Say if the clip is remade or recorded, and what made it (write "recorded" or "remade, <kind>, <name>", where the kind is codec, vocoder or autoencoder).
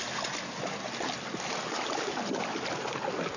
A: recorded